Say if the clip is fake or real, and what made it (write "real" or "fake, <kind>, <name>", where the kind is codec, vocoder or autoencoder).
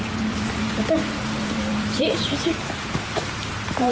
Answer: fake, vocoder, BigVGAN v2